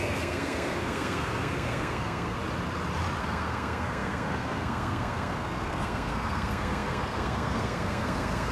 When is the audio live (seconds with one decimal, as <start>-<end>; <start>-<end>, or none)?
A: 2.4-3.2